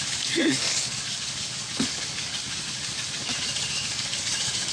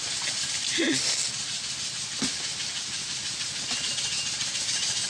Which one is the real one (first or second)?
second